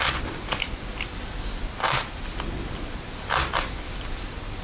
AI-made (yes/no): no